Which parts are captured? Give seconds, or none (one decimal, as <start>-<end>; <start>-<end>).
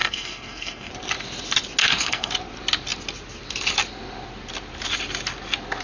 0.9-1.8; 2.3-5.8